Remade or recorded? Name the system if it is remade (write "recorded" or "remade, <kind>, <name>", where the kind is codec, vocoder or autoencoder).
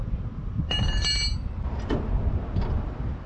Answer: recorded